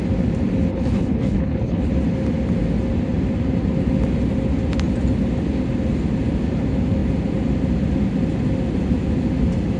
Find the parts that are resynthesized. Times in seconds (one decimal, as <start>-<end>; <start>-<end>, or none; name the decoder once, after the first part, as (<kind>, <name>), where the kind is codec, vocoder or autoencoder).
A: 0.7-1.9 (codec, HILCodec)